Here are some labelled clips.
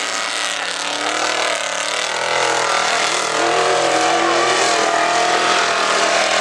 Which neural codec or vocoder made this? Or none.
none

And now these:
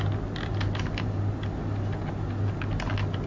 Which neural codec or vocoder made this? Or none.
none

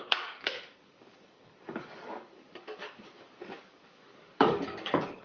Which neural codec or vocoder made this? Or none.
codec, DAC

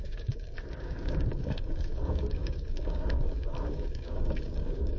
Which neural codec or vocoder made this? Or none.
codec, DAC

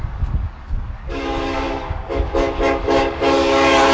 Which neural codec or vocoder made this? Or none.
codec, DAC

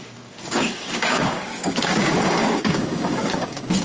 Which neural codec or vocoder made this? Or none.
codec, DAC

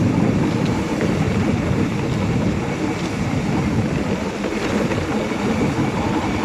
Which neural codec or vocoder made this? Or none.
none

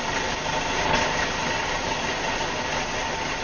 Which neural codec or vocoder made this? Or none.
none